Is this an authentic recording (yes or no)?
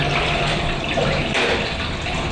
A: yes